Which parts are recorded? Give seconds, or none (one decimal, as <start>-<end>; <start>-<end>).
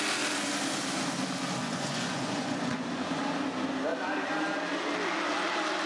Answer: 0.0-1.6; 3.2-5.9